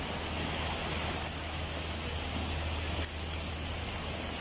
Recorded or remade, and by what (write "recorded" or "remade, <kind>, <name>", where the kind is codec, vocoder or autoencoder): recorded